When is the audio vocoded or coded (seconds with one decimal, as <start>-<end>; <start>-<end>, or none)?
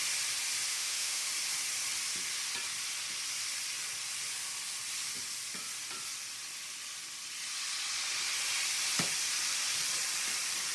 0.7-1.3